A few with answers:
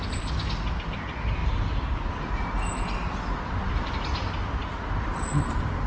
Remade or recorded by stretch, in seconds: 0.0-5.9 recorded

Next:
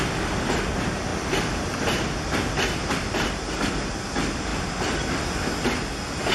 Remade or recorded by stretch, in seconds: 0.0-6.3 recorded

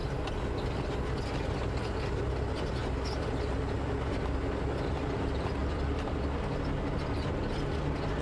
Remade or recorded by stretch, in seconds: 0.0-5.6 recorded; 5.6-6.2 remade; 6.2-8.2 recorded

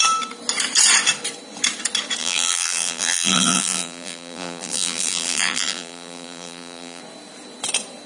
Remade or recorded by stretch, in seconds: 0.0-2.2 recorded; 2.2-7.0 remade; 7.0-8.1 recorded